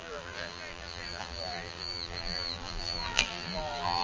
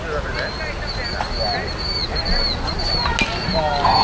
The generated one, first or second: first